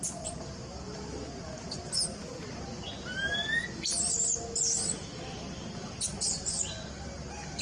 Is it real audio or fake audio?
real